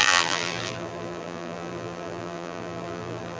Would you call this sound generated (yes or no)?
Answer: yes